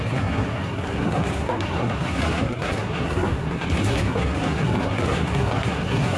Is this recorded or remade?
remade